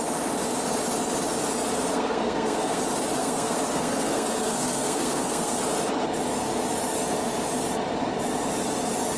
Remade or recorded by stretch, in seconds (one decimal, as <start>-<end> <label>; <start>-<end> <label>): 0.0-1.9 recorded; 1.9-2.8 remade; 2.8-3.2 recorded; 3.2-5.6 remade; 5.6-9.2 recorded